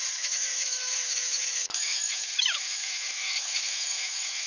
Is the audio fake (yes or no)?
yes